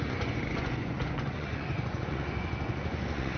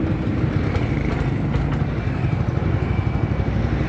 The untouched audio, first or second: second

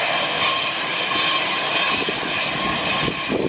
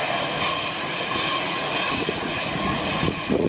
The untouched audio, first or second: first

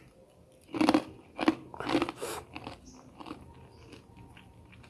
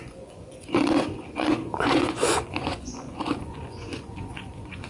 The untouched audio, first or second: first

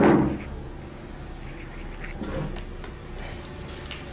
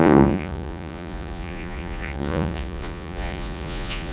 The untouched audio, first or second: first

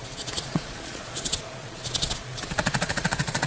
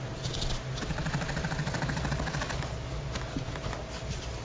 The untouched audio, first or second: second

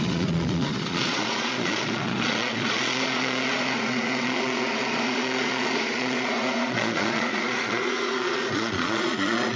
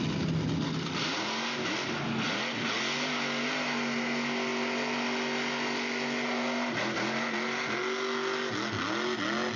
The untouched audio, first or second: second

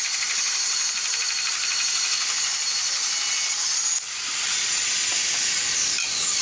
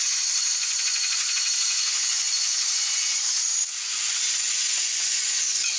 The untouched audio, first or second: first